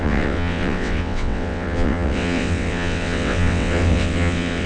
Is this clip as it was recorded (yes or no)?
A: no